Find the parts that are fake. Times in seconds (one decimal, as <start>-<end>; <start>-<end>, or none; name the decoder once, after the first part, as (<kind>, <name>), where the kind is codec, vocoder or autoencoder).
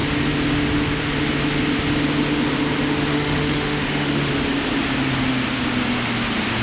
3.1-4.3 (autoencoder, DAC-VAE)